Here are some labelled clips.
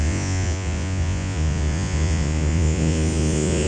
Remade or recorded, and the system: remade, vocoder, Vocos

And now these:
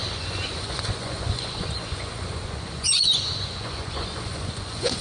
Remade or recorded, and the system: remade, vocoder, Vocos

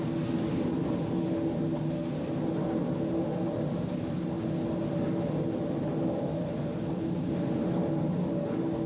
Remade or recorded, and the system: recorded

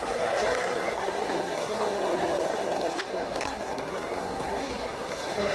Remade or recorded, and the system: remade, codec, SNAC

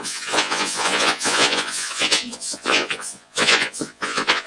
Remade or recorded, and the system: remade, vocoder, Vocos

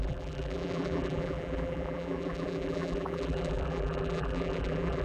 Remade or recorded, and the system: remade, vocoder, BigVGAN v2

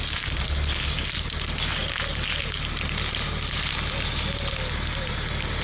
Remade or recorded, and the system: recorded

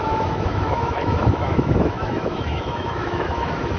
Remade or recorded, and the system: remade, autoencoder, DAC-VAE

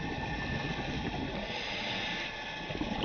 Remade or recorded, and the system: recorded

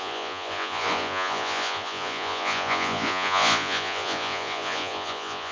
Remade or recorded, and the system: remade, vocoder, Vocos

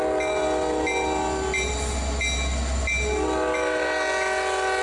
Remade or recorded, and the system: recorded